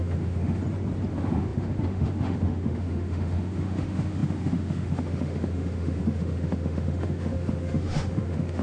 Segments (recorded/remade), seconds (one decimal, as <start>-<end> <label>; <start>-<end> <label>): 0.0-0.6 remade; 0.6-1.1 recorded; 1.1-8.6 remade